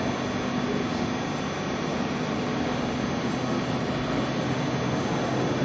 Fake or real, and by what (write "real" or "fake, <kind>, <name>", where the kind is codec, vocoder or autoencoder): real